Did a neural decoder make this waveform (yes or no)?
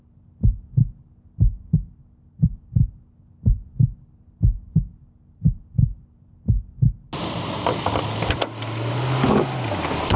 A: no